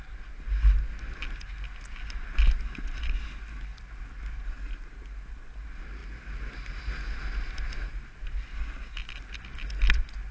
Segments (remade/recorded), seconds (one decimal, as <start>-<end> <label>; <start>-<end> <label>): 0.0-10.3 recorded